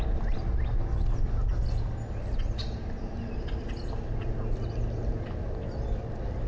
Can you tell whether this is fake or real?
real